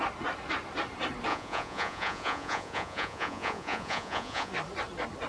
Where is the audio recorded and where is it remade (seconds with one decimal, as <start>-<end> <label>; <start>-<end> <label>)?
0.0-1.3 recorded; 1.3-4.5 remade; 4.5-5.3 recorded